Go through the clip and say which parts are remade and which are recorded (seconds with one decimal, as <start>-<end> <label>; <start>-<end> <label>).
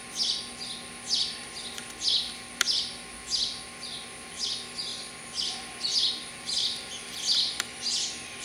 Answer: 0.0-8.4 recorded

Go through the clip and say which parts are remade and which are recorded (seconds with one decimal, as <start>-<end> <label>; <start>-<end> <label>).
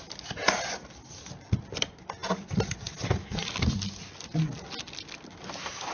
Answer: 0.0-5.9 recorded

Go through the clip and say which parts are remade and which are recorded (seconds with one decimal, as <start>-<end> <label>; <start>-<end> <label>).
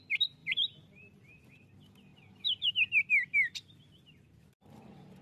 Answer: 0.0-0.4 recorded; 0.4-1.4 remade; 1.4-5.2 recorded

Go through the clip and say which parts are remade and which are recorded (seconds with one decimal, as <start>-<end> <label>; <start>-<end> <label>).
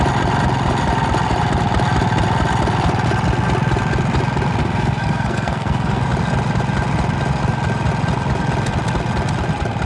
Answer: 0.0-4.6 recorded; 4.6-6.0 remade; 6.0-9.9 recorded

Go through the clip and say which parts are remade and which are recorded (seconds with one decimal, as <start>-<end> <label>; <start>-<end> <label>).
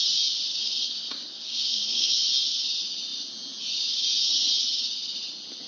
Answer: 0.0-0.6 recorded; 0.6-2.1 remade; 2.1-5.7 recorded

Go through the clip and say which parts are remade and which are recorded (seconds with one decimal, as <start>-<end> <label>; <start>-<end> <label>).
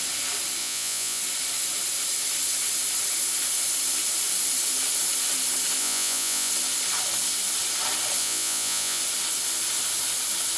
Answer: 0.0-0.6 recorded; 0.6-1.2 remade; 1.2-5.8 recorded; 5.8-6.5 remade; 6.5-8.2 recorded; 8.2-9.0 remade; 9.0-10.6 recorded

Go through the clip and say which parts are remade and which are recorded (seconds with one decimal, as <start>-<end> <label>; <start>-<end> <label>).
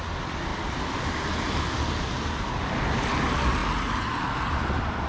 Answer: 0.0-5.1 recorded